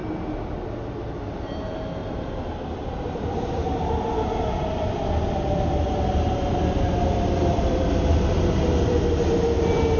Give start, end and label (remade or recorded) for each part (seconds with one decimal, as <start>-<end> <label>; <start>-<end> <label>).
0.0-2.0 recorded; 2.0-4.5 remade; 4.5-7.4 recorded; 7.4-8.9 remade; 8.9-10.0 recorded